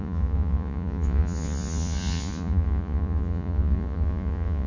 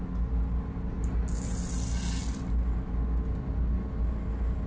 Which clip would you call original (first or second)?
second